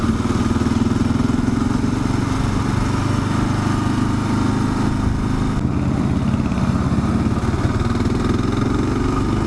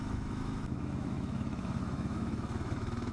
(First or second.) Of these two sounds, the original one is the first